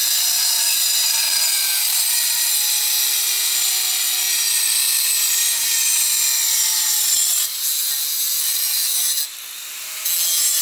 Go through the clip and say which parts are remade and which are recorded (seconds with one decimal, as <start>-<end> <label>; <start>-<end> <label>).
0.0-10.6 recorded